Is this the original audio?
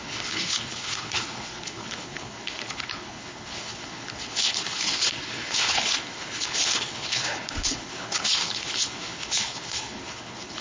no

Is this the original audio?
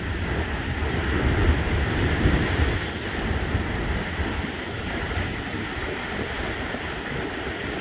no